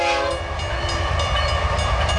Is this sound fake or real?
real